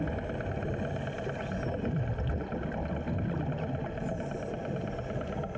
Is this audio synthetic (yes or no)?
no